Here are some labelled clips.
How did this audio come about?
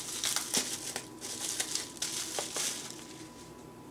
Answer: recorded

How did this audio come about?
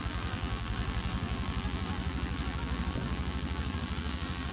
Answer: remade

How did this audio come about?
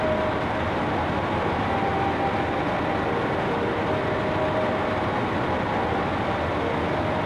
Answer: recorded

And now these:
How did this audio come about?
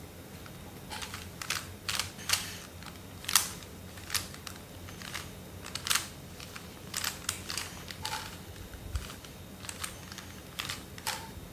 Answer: recorded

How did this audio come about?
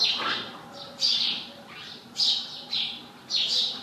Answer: remade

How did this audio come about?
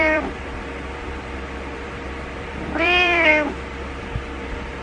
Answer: remade